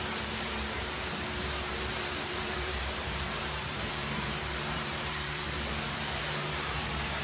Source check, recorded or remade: remade